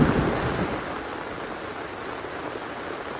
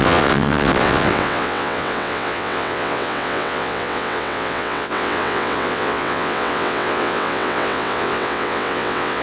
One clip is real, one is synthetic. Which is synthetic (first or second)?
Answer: second